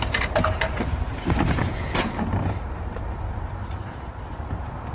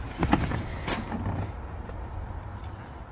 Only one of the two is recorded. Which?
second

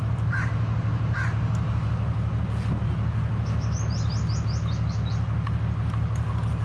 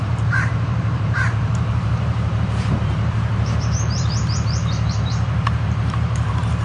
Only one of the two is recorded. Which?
first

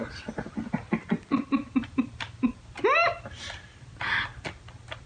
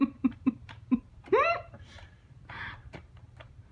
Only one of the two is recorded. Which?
first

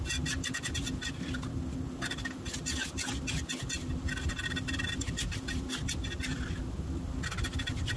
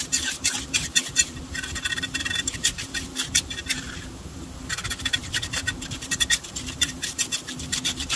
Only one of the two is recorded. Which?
first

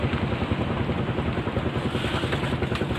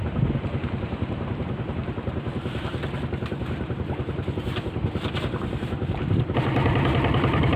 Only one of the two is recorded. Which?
first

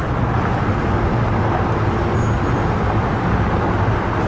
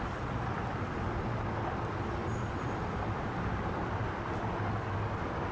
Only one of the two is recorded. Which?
first